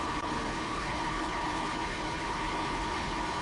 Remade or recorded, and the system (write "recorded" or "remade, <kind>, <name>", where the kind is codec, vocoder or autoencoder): remade, codec, HILCodec